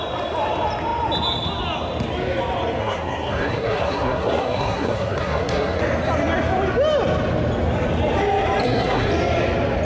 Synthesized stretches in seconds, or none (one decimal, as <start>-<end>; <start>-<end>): 2.8-5.8; 8.6-9.1